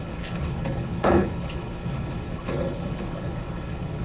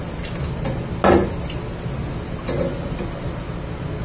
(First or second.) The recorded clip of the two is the second